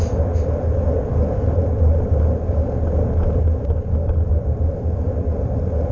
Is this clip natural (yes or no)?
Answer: yes